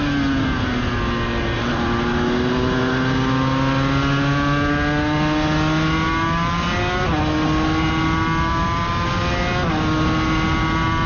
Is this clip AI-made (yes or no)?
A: no